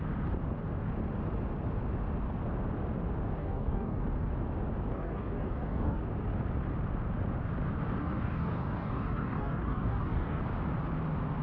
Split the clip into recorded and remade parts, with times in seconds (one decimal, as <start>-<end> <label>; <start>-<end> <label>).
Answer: 0.0-3.4 recorded; 3.4-4.0 remade; 4.0-4.9 recorded; 4.9-6.0 remade; 6.0-8.0 recorded; 8.0-10.4 remade; 10.4-11.4 recorded